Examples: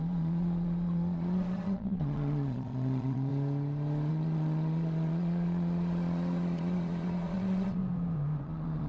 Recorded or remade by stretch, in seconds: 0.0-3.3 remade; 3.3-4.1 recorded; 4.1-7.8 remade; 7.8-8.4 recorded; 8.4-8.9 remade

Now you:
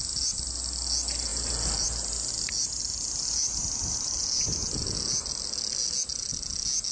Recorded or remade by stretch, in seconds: 0.0-6.9 recorded